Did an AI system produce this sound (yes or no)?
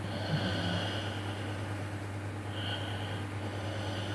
no